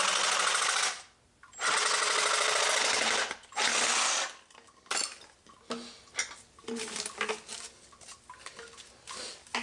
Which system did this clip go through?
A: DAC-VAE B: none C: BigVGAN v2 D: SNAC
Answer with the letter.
B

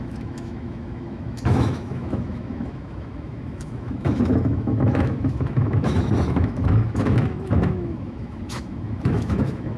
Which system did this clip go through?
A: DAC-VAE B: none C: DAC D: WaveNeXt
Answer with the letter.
A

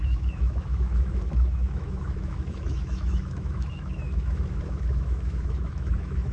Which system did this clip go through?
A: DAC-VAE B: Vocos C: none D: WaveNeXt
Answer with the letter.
A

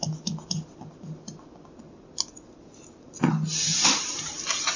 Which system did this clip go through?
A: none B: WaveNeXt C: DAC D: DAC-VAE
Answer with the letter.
A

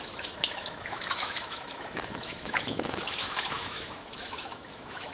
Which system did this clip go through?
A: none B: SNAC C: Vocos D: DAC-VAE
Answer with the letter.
D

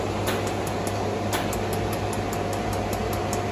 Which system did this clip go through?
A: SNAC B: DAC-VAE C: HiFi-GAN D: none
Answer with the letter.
D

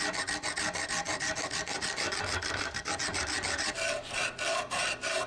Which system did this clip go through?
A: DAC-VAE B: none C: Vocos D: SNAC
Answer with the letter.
B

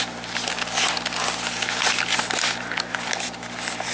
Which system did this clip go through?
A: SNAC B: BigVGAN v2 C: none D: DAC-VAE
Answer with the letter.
C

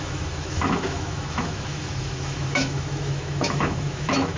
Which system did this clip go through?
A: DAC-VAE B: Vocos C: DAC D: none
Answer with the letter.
A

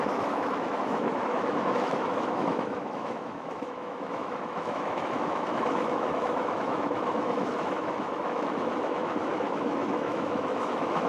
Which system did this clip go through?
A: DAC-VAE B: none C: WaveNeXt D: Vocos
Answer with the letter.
A